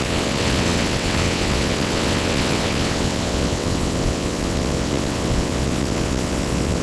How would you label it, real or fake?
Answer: fake